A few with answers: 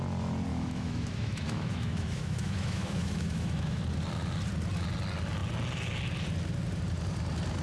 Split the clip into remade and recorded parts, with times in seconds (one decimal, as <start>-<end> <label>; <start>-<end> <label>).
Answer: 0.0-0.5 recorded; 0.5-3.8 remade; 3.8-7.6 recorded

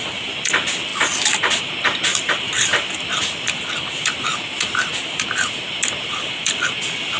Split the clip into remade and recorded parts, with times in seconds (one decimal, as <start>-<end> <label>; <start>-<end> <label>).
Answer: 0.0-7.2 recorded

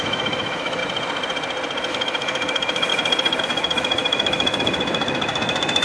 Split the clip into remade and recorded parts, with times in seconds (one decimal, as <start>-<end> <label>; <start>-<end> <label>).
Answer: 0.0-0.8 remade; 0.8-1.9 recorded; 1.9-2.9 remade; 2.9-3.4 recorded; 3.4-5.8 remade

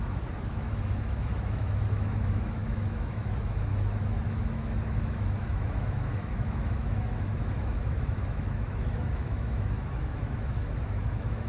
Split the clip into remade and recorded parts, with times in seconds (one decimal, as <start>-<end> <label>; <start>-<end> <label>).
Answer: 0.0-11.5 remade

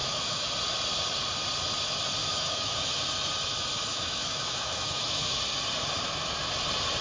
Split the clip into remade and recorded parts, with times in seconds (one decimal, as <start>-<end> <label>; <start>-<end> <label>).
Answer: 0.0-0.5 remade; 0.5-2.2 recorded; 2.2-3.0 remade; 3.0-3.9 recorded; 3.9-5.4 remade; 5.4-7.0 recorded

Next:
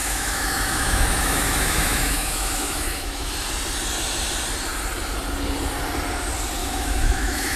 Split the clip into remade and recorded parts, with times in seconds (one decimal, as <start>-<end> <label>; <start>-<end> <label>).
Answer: 0.0-3.3 remade; 3.3-6.6 recorded; 6.6-7.6 remade

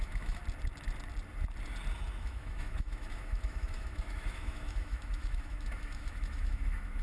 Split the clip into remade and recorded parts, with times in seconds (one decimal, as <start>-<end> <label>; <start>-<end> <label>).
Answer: 0.0-0.4 remade; 0.4-2.2 recorded; 2.2-7.0 remade